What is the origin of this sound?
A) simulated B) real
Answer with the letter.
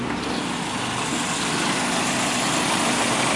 B